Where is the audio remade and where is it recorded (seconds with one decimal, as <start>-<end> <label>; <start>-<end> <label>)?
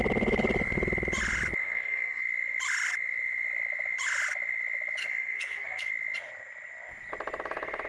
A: 0.0-1.6 recorded; 1.6-2.2 remade; 2.2-5.0 recorded; 5.0-5.9 remade; 5.9-7.9 recorded